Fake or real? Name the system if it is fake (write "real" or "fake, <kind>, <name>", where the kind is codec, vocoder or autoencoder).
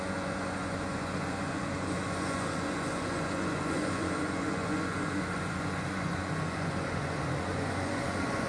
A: fake, vocoder, Vocos